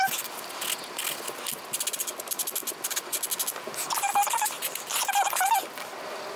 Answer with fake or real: real